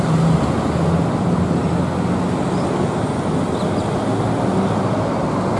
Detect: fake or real real